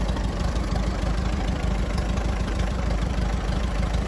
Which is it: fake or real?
fake